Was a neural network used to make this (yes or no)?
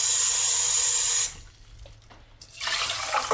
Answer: no